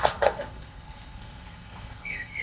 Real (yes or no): no